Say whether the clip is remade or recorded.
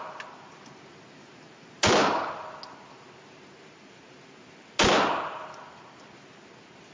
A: remade